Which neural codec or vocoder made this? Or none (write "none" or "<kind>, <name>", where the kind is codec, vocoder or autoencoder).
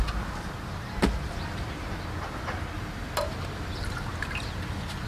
none